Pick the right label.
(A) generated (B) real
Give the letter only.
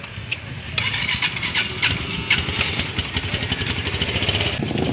B